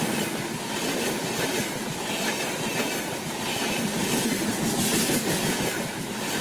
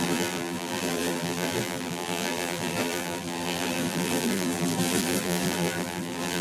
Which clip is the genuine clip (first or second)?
first